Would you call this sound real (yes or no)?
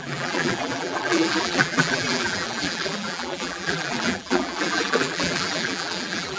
no